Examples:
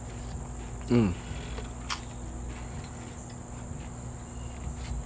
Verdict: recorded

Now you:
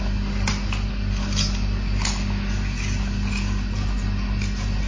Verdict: recorded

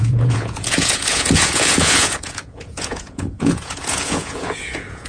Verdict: remade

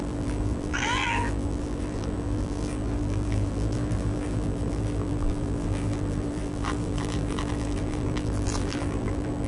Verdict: remade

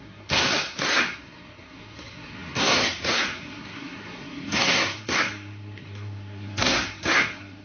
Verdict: remade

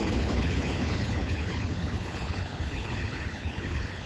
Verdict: remade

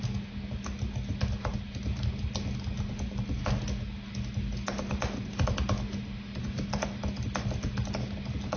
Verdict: recorded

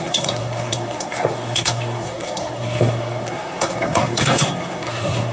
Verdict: remade